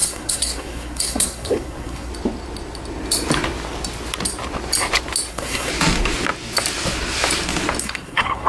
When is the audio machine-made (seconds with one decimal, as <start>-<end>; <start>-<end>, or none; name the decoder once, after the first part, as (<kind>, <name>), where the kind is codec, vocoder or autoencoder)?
0.0-2.1 (codec, SNAC); 5.3-5.7; 7.8-8.5